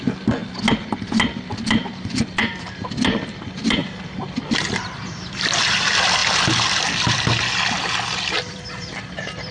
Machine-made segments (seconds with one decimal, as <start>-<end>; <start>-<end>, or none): 0.0-0.4; 1.5-6.2; 7.1-9.5